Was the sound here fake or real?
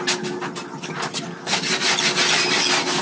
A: real